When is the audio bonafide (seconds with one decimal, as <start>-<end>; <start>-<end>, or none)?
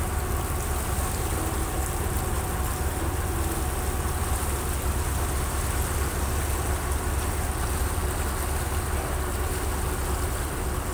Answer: 0.0-10.9